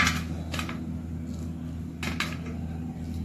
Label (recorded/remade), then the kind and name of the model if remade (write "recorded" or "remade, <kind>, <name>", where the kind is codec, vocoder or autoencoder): recorded